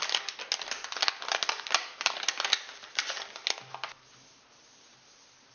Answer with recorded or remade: recorded